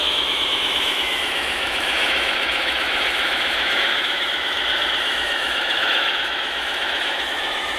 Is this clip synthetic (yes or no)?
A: yes